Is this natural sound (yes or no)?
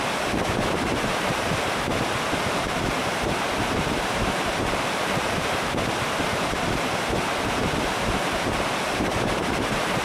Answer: no